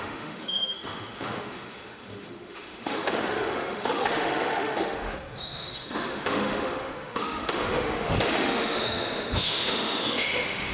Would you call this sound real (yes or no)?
no